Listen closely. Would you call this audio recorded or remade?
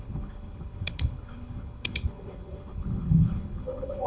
remade